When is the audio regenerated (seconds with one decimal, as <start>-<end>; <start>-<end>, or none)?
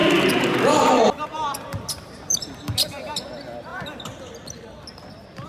0.0-3.3